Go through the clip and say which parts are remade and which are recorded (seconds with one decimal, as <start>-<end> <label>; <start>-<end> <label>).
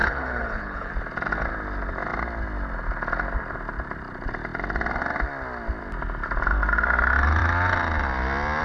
0.0-0.9 remade; 0.9-8.6 recorded